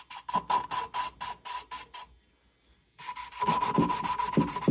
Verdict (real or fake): real